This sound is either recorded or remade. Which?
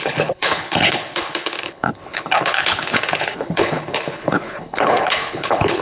remade